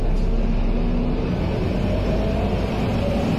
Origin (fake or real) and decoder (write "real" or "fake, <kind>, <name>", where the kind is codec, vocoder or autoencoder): real